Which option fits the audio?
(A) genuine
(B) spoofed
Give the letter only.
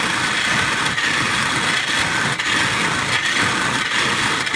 A